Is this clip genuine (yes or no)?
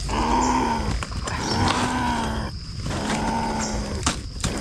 yes